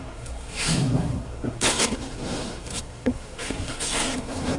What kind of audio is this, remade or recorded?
remade